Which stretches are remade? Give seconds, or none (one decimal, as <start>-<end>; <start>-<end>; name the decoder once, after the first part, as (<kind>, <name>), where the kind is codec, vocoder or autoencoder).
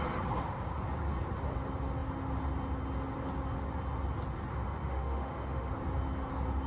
4.5-5.7 (autoencoder, DAC-VAE)